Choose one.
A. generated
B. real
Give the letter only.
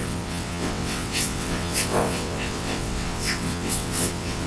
A